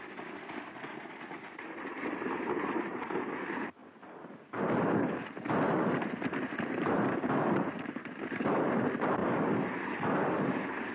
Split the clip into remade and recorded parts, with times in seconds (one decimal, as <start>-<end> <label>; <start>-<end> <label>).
0.0-9.2 remade; 9.2-9.8 recorded; 9.8-10.9 remade

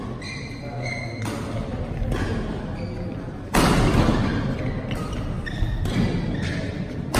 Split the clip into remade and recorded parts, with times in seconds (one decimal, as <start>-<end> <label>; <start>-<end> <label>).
0.0-7.2 recorded

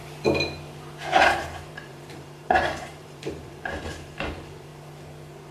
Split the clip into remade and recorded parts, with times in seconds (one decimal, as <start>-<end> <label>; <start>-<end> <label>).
0.0-1.2 recorded; 1.2-4.7 remade; 4.7-5.5 recorded

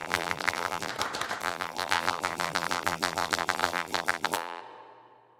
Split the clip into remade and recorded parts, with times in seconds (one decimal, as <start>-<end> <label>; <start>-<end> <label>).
0.0-0.9 remade; 0.9-1.4 recorded; 1.4-4.6 remade; 4.6-5.4 recorded

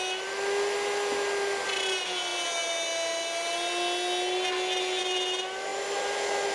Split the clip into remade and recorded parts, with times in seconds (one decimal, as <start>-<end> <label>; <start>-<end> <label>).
0.0-6.5 recorded